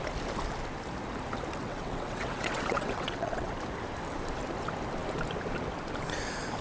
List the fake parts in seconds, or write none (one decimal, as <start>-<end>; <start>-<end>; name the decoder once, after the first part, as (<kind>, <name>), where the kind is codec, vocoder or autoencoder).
1.6-3.5 (vocoder, WaveNeXt)